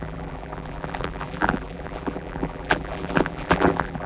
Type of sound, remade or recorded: remade